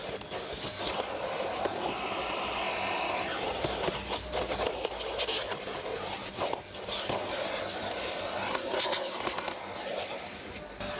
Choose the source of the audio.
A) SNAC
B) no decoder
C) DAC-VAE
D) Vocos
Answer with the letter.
B